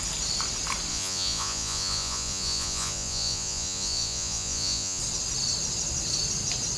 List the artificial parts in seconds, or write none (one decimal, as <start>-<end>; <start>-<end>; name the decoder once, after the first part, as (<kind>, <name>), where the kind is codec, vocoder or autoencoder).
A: 0.9-5.0 (vocoder, Vocos)